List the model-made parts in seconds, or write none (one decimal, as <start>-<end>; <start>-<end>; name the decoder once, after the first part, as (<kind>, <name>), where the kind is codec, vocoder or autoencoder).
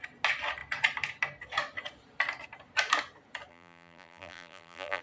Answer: 3.5-5.0 (vocoder, BigVGAN v2)